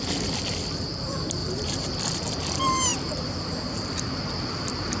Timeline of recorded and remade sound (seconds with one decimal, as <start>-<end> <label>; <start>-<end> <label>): 0.0-1.4 recorded; 1.4-1.9 remade; 1.9-2.9 recorded; 2.9-4.2 remade; 4.2-5.0 recorded